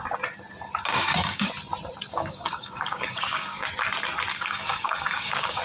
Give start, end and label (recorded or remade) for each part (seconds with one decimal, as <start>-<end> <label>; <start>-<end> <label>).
0.0-0.9 recorded; 0.9-1.5 remade; 1.5-2.1 recorded; 2.1-3.6 remade; 3.6-4.3 recorded; 4.3-5.6 remade